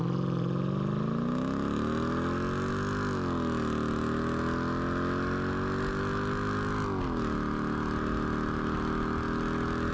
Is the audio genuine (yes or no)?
yes